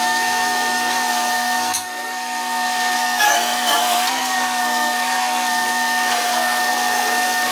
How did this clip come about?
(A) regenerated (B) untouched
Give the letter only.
A